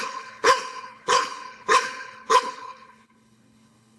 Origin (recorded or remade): remade